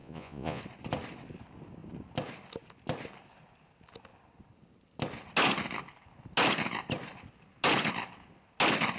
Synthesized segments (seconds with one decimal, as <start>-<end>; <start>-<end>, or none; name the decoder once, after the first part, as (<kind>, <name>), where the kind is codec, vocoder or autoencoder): 0.0-0.6 (vocoder, Vocos)